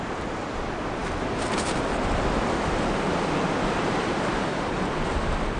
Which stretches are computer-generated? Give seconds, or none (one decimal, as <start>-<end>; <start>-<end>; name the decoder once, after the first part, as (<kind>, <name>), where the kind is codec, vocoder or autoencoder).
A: none